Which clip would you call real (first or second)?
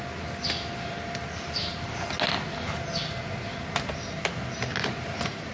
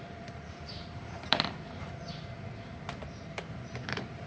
first